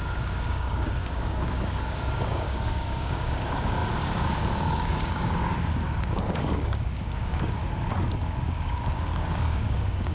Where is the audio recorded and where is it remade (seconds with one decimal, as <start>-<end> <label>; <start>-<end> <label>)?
0.0-7.6 remade; 7.6-8.2 recorded; 8.2-10.1 remade